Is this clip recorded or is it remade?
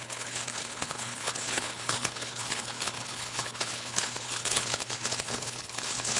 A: remade